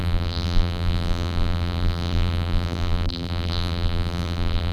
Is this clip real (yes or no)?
no